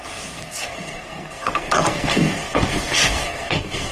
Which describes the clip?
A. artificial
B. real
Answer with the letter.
A